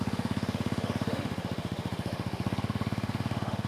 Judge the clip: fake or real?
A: fake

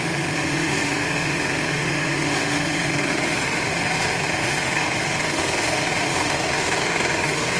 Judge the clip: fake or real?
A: fake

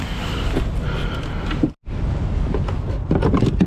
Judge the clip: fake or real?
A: real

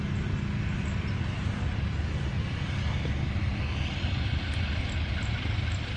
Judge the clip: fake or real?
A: real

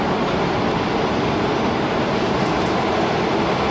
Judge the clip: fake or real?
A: real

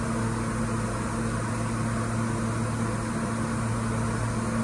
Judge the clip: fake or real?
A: real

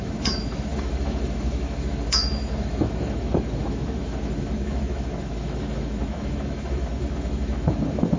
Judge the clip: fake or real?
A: fake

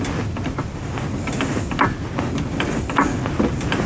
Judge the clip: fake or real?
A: real